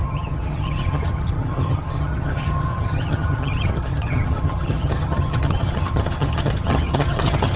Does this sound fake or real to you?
fake